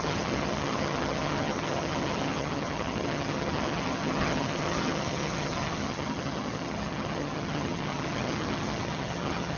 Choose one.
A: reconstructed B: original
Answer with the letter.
A